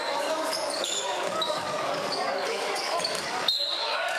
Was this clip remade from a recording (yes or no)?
yes